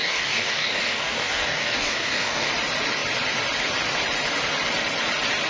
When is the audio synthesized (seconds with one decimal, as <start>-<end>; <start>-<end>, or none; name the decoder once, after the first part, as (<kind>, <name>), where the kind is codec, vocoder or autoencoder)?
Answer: 0.0-2.5 (codec, DAC)